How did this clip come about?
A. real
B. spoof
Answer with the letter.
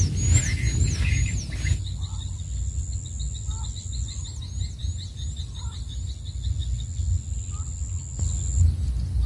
A